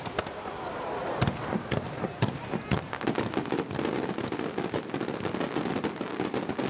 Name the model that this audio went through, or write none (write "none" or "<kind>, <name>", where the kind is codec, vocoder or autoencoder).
none